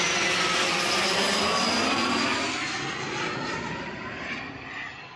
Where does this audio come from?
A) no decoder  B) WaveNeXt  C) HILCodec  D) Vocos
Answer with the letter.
A